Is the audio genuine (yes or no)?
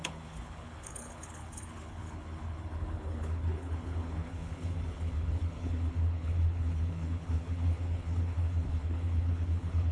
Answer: no